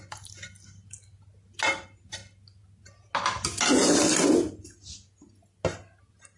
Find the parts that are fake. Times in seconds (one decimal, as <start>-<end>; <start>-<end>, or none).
none